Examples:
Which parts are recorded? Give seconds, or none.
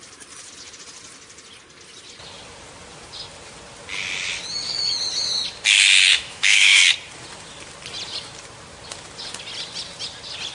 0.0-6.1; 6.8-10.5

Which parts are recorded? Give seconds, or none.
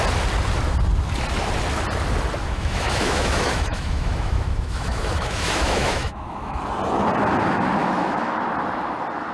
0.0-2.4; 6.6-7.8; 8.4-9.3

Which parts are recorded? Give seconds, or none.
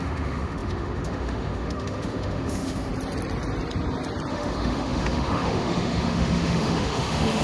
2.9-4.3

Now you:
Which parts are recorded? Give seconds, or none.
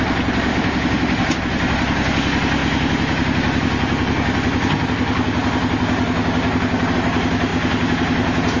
0.0-0.5; 1.4-8.6